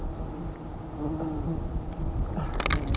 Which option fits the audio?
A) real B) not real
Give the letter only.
A